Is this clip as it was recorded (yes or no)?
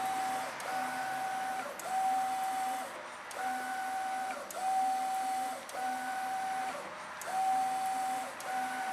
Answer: yes